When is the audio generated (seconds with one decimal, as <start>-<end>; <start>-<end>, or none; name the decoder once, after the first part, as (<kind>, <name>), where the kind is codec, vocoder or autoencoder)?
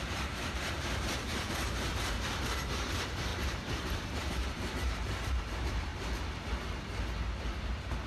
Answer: 0.0-5.9 (vocoder, BigVGAN v2); 7.4-8.1